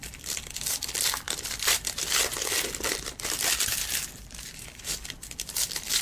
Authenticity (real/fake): fake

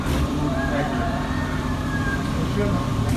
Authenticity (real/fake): fake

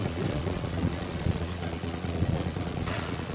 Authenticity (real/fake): fake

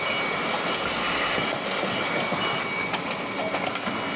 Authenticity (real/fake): real